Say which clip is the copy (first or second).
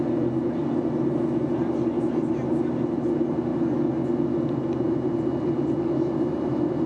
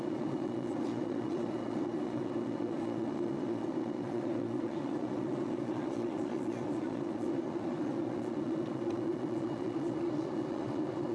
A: second